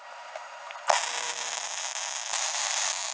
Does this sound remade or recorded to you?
recorded